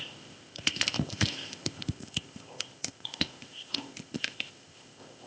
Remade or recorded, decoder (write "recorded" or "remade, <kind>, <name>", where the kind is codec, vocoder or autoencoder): remade, codec, ZipCodec